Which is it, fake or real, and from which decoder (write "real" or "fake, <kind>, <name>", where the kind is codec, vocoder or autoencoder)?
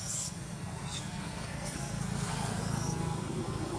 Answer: fake, codec, SNAC